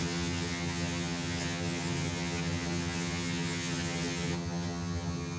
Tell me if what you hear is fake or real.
fake